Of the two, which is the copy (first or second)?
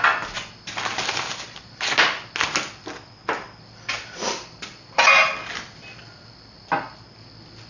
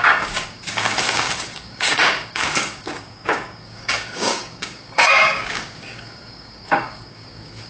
second